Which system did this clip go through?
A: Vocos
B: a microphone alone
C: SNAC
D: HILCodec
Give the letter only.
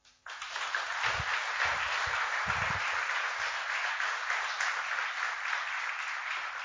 B